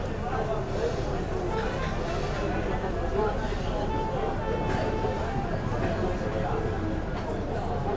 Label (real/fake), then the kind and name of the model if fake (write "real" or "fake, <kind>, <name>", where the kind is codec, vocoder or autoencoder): real